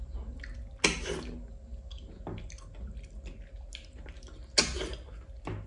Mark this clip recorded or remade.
recorded